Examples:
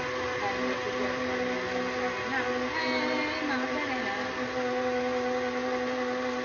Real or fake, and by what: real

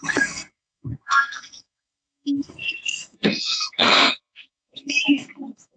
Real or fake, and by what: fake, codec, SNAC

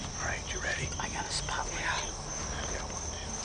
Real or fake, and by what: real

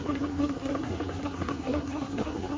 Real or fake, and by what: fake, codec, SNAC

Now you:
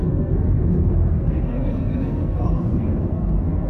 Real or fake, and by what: fake, codec, SNAC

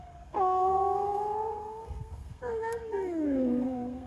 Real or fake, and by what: fake, codec, SNAC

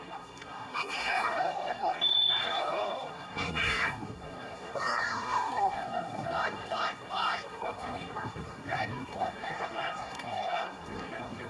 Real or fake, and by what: fake, codec, SNAC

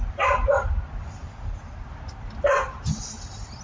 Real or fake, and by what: real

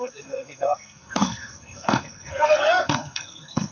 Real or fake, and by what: fake, codec, SNAC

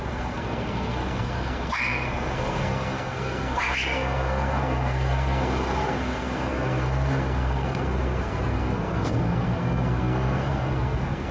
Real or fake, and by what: fake, codec, SNAC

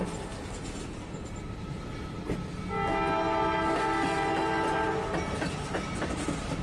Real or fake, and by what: real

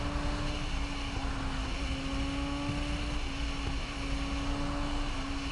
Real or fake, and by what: real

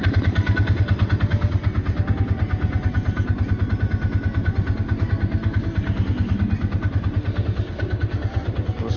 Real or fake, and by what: real